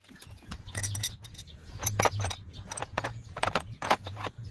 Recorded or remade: remade